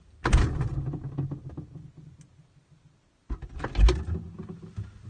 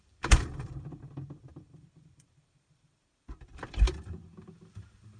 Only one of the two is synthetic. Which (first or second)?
second